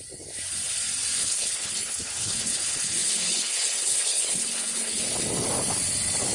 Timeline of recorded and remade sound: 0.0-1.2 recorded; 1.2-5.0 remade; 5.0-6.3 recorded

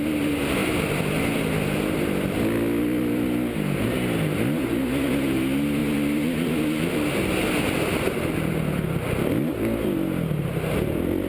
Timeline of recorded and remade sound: 0.0-11.3 recorded

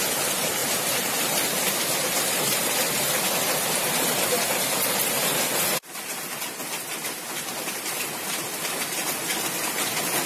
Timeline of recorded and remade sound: 0.0-10.3 recorded

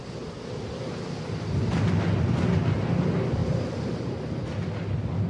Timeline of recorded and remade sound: 0.0-5.3 recorded

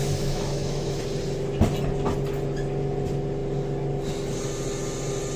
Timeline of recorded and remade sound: 0.0-1.0 remade; 1.0-5.4 recorded

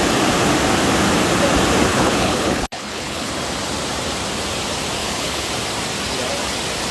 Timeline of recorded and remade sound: 0.0-1.9 recorded; 1.9-3.3 remade; 3.3-5.0 recorded; 5.0-5.5 remade; 5.5-6.9 recorded

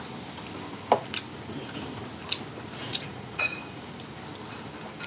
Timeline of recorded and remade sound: 0.0-2.8 recorded; 2.8-3.8 remade; 3.8-5.1 recorded

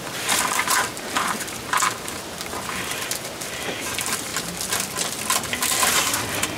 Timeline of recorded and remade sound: 0.0-4.3 remade; 4.3-6.6 recorded